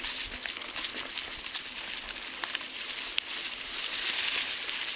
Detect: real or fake real